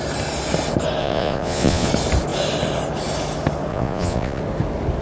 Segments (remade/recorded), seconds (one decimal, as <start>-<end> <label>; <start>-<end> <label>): 0.0-1.0 recorded; 1.0-1.9 remade; 1.9-3.7 recorded; 3.7-4.4 remade; 4.4-5.0 recorded